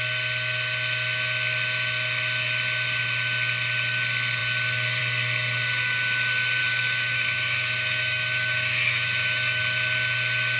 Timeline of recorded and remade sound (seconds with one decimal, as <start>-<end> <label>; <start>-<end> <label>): 0.0-6.6 recorded; 6.6-9.6 remade; 9.6-10.6 recorded